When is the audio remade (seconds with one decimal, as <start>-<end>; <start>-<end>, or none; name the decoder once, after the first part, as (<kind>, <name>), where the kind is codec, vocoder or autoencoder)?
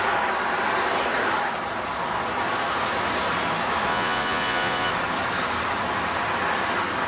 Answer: 3.9-4.9 (vocoder, Vocos)